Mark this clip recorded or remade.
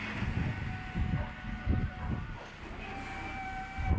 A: recorded